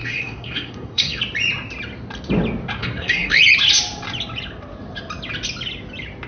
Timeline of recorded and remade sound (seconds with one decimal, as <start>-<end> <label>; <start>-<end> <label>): 0.0-1.2 remade; 1.2-2.8 recorded; 2.8-3.4 remade; 3.4-6.3 recorded